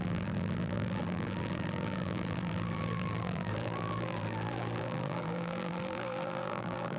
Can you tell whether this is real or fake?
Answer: fake